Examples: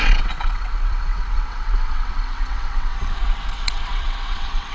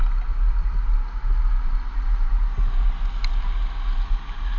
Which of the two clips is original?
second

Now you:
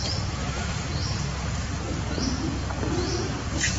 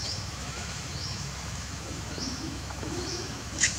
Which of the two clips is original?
first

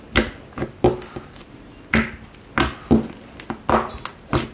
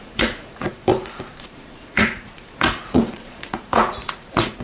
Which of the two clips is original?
first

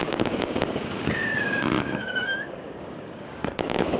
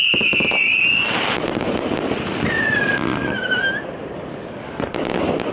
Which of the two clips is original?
second